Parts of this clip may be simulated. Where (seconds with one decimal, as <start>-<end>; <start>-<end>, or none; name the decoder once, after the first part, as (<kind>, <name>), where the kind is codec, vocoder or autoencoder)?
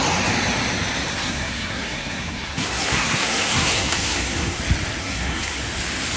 1.1-4.6 (codec, SNAC); 5.0-5.6